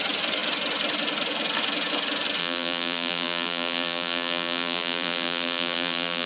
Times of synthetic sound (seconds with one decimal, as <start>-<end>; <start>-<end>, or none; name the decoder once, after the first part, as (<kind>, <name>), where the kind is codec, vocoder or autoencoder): 2.4-6.3 (vocoder, BigVGAN v2)